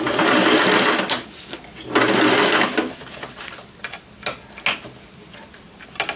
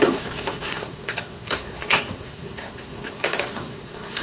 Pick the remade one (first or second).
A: second